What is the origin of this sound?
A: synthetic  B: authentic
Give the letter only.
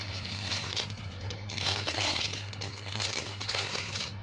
A